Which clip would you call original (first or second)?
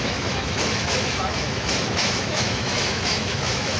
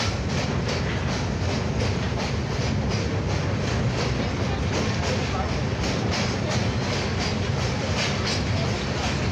second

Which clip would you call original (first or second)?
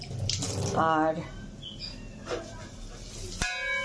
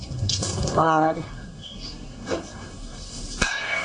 first